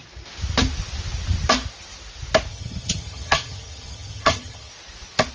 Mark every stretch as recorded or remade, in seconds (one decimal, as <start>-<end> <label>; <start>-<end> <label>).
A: 0.0-2.5 recorded; 2.5-4.7 remade; 4.7-5.3 recorded

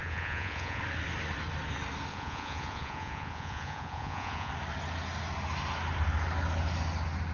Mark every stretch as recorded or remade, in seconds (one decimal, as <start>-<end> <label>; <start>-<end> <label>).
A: 0.0-0.8 remade; 0.8-2.1 recorded; 2.1-4.5 remade; 4.5-7.3 recorded

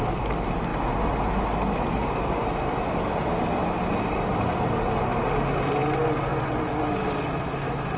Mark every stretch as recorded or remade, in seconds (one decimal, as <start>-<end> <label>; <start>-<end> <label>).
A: 0.0-8.0 recorded

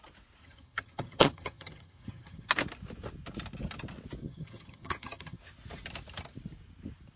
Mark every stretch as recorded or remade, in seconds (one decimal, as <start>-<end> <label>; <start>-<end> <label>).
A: 0.0-0.4 recorded; 0.4-2.5 remade; 2.5-4.2 recorded; 4.2-5.4 remade; 5.4-7.2 recorded